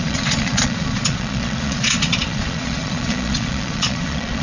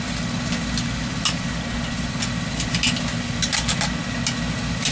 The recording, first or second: second